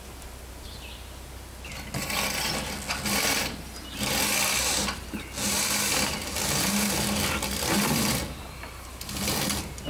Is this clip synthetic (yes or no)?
no